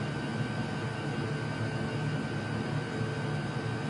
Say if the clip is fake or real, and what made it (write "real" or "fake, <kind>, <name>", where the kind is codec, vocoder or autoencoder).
real